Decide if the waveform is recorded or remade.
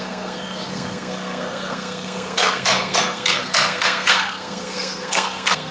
remade